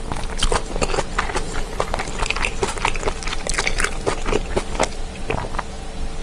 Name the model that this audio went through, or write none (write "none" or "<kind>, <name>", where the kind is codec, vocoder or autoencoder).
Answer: none